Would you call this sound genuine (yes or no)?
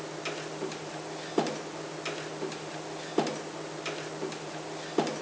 no